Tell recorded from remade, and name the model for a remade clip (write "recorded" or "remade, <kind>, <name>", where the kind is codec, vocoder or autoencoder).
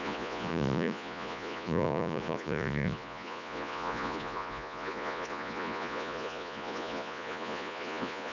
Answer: remade, vocoder, Vocos